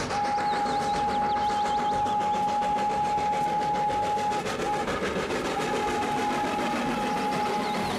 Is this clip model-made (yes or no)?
no